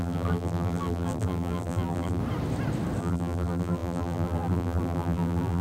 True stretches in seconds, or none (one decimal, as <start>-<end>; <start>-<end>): 2.2-3.0